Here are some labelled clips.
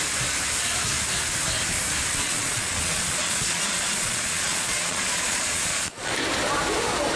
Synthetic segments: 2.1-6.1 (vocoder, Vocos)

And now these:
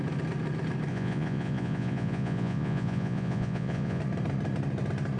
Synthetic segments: 0.9-4.0 (vocoder, Vocos)